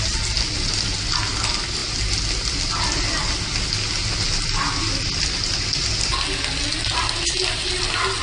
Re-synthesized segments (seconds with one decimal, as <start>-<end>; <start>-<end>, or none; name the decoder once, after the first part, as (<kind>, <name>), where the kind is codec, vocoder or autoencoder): none